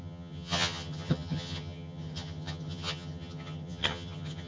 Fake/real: fake